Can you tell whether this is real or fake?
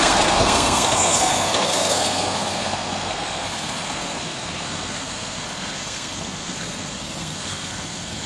fake